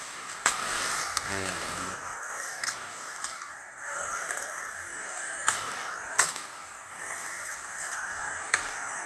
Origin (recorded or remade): remade